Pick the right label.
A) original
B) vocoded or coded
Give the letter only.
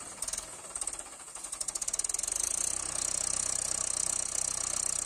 A